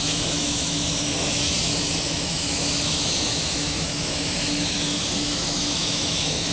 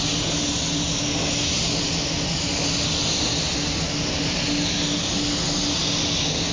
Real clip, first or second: second